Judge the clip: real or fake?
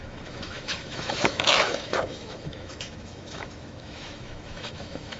fake